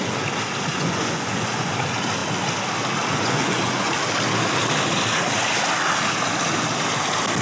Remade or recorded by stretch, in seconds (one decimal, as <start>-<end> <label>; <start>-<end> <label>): 0.0-0.7 recorded; 0.7-1.7 remade; 1.7-3.1 recorded; 3.1-3.9 remade; 3.9-7.4 recorded